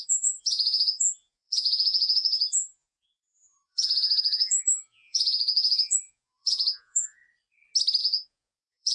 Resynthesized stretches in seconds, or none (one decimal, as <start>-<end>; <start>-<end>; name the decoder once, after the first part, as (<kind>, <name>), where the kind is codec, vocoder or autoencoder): 0.0-7.2 (vocoder, Vocos); 8.0-8.9